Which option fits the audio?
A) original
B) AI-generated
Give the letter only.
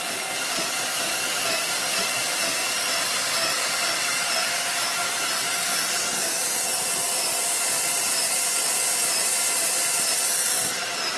A